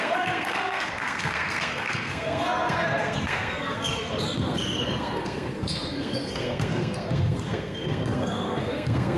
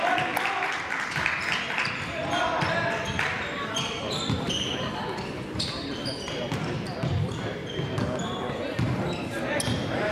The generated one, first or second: first